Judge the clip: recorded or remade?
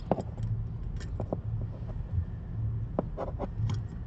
recorded